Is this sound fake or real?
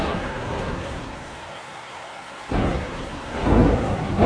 fake